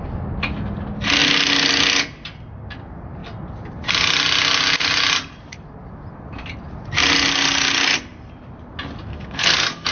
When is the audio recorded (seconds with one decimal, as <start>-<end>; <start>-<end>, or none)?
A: 0.0-9.1